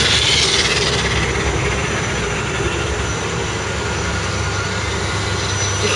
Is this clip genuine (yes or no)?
yes